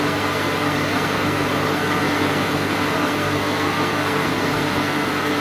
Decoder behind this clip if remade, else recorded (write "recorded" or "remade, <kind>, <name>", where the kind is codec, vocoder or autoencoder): remade, codec, SNAC